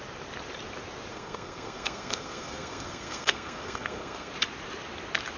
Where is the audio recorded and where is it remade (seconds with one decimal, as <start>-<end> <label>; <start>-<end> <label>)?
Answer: 0.0-1.1 recorded; 1.1-4.3 remade; 4.3-5.4 recorded